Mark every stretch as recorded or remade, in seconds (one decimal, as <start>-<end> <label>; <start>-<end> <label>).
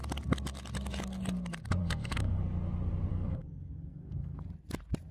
0.0-1.8 recorded; 1.8-2.4 remade; 2.4-3.1 recorded; 3.1-4.4 remade; 4.4-5.1 recorded